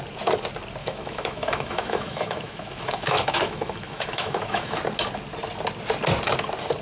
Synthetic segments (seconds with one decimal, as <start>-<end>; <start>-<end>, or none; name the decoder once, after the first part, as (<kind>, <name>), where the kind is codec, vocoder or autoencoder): 0.8-4.8 (autoencoder, DAC-VAE)